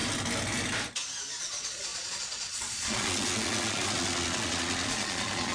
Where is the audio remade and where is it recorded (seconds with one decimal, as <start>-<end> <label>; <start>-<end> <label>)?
0.0-1.4 recorded; 1.4-5.5 remade